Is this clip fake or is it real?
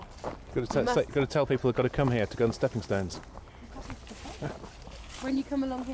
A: real